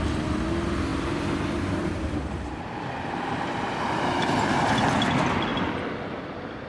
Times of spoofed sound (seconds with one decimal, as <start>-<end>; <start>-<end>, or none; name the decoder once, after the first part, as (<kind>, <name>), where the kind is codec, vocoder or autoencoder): 0.9-4.9 (vocoder, BigVGAN v2); 5.5-6.1